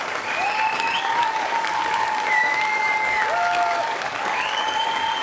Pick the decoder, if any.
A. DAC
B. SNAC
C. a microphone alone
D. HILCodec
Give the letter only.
A